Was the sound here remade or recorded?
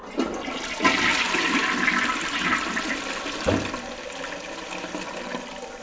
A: recorded